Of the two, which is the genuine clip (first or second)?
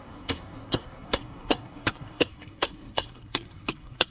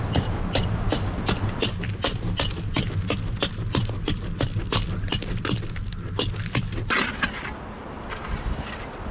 second